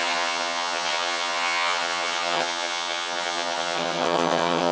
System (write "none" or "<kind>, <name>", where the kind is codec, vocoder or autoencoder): vocoder, HiFi-GAN